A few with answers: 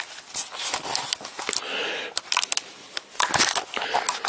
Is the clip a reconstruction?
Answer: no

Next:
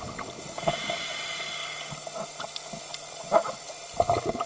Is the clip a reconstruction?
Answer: no